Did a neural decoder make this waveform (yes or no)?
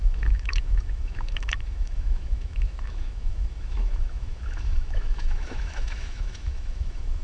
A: yes